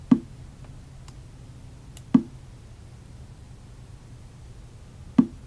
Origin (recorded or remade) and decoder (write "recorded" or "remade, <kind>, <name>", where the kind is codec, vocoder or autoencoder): recorded